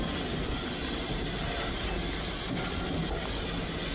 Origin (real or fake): real